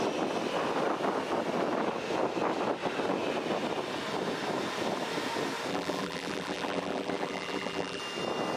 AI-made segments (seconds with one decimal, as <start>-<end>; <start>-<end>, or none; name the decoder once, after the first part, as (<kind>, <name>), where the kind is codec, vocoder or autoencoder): 5.7-8.0 (vocoder, BigVGAN v2)